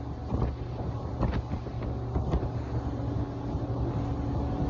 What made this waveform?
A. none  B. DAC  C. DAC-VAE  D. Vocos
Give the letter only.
A